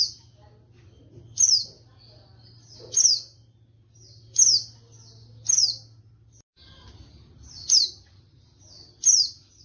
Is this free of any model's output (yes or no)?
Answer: yes